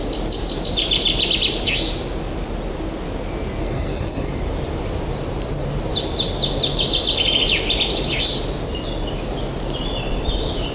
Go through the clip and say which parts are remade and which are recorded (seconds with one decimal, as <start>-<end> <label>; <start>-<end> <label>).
0.0-3.6 recorded; 3.6-4.3 remade; 4.3-10.7 recorded